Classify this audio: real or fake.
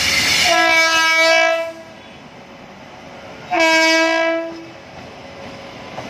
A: real